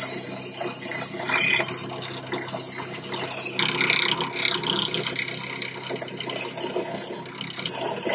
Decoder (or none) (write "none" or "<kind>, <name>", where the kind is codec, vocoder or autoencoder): none